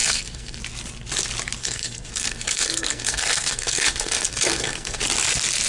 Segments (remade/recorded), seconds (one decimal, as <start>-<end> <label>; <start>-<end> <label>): 0.0-0.6 remade; 0.6-1.6 recorded; 1.6-5.0 remade; 5.0-5.7 recorded